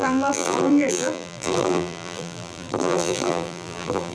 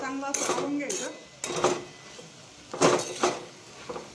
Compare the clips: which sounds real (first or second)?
second